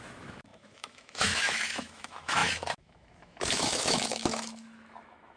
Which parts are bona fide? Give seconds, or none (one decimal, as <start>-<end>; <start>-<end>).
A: none